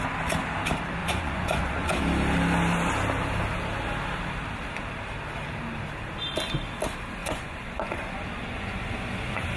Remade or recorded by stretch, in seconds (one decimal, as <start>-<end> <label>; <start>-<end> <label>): 0.0-1.0 recorded; 1.0-2.0 remade; 2.0-7.2 recorded; 7.2-9.6 remade